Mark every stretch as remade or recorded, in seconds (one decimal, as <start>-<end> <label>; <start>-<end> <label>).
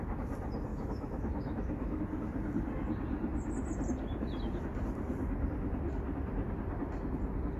0.0-0.7 recorded; 0.7-2.0 remade; 2.0-7.6 recorded